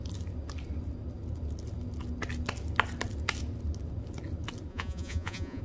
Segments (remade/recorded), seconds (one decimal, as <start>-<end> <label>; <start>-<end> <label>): 0.0-4.7 recorded; 4.7-5.6 remade